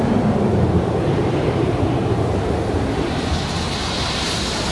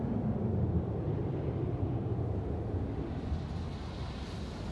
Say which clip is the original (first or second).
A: second